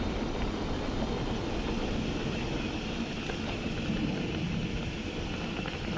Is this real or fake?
real